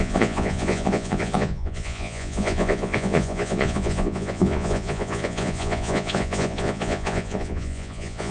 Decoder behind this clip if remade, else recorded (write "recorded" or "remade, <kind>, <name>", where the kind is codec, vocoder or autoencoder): remade, vocoder, Vocos